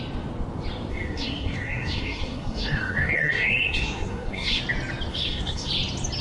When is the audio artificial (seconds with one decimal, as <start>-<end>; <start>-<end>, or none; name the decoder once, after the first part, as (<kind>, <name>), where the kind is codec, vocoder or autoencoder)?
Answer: 0.9-4.6 (codec, SNAC); 5.1-5.7